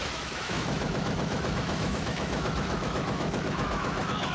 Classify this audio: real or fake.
fake